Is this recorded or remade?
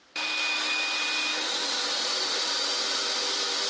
recorded